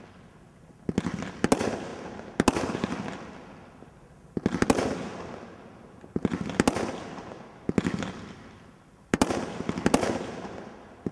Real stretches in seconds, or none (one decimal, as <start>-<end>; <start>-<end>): 0.0-11.1